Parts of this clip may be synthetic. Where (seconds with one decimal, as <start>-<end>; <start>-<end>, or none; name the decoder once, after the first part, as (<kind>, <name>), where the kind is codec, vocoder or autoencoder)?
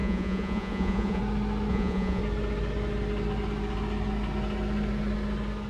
0.0-1.2 (vocoder, Vocos); 1.7-2.2